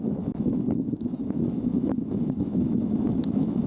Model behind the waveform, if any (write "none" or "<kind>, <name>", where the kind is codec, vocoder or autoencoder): autoencoder, DAC-VAE